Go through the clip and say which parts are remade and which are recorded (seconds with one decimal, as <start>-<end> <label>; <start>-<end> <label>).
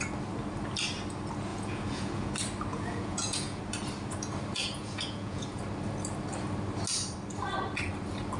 0.0-1.5 recorded; 1.5-2.3 remade; 2.3-2.7 recorded; 2.7-3.6 remade; 3.6-4.6 recorded; 4.6-5.6 remade; 5.6-8.4 recorded